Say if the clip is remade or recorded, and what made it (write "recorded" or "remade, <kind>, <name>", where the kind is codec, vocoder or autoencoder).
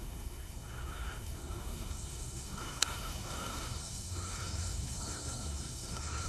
remade, codec, SNAC